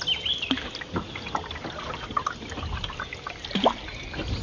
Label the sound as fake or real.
real